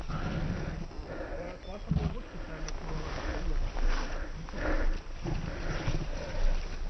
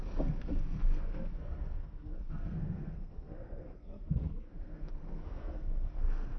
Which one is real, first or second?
first